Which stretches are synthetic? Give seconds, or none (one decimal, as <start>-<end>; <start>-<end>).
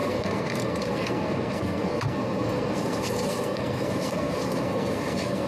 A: 0.0-5.5